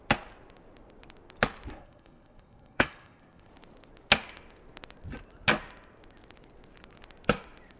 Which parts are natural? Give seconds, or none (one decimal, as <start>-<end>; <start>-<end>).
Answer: 0.0-1.8; 3.5-7.8